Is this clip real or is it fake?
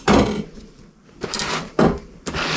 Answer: fake